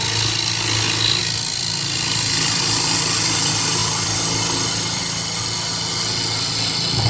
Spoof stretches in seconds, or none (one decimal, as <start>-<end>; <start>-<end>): 1.2-2.6; 3.8-5.0